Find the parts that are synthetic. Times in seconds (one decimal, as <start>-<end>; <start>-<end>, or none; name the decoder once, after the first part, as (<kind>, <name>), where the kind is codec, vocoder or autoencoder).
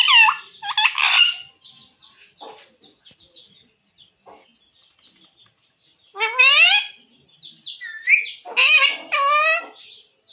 none